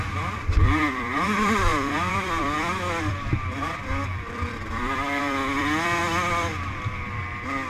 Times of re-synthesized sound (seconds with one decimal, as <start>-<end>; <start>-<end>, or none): 0.0-6.0; 6.7-7.7